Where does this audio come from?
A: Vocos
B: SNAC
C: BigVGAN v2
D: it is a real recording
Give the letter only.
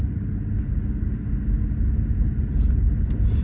D